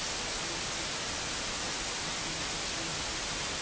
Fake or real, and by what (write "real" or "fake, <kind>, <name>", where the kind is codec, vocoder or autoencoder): real